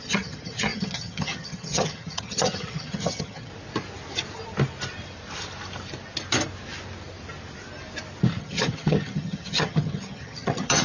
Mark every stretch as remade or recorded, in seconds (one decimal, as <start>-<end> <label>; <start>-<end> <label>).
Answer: 0.0-3.5 remade; 3.5-8.4 recorded; 8.4-10.8 remade